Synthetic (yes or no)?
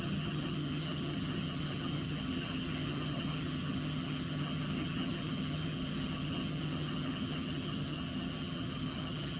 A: yes